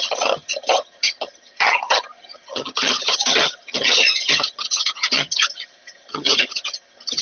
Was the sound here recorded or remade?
remade